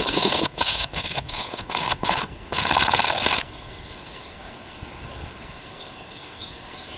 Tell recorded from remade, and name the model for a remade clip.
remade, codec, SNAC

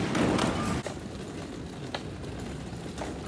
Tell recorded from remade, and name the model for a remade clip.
recorded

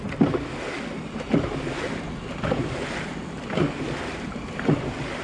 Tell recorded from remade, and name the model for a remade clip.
recorded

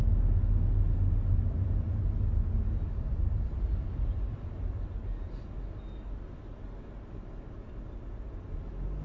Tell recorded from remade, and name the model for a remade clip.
recorded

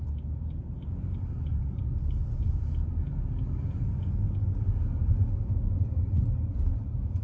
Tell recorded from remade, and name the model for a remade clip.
recorded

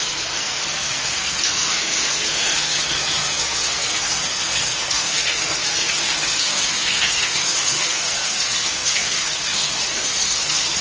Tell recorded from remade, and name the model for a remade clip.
remade, codec, SNAC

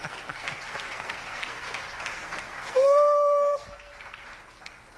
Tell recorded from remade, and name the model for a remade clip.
remade, codec, SNAC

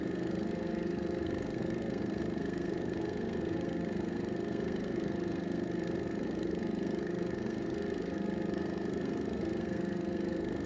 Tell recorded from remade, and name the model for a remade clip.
remade, codec, SNAC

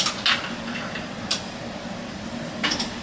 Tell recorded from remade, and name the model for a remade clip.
recorded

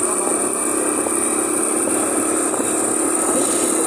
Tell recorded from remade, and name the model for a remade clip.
recorded